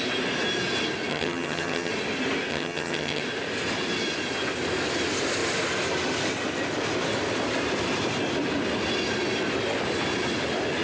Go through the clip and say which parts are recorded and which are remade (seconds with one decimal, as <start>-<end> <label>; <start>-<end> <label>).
0.0-1.1 recorded; 1.1-1.9 remade; 1.9-2.5 recorded; 2.5-3.2 remade; 3.2-10.8 recorded